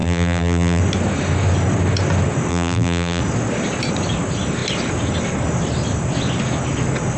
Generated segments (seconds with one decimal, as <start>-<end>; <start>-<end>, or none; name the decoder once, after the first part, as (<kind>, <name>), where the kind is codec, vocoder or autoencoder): 0.0-0.8 (vocoder, BigVGAN v2); 2.5-3.2